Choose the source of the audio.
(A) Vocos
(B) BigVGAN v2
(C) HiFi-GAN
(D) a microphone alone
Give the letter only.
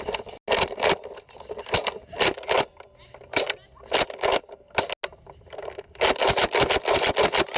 D